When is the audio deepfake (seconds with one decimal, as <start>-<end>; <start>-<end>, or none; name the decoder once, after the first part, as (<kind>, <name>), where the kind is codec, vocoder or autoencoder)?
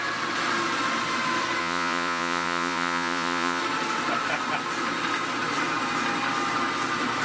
1.6-3.6 (vocoder, Vocos)